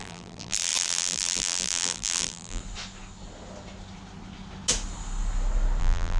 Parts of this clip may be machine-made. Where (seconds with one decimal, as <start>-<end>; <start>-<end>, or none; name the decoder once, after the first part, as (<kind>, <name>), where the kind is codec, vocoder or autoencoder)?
0.0-2.6 (vocoder, BigVGAN v2); 5.8-6.2